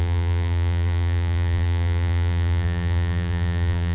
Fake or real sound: fake